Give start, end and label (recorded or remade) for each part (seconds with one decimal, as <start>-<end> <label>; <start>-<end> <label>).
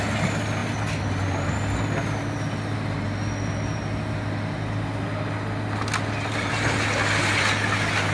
0.0-8.1 recorded